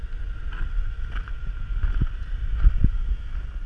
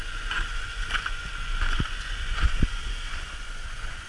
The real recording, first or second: first